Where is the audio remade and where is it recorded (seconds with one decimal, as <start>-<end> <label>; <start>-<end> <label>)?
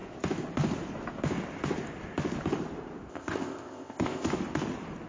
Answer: 0.0-3.1 recorded; 3.1-4.3 remade; 4.3-5.1 recorded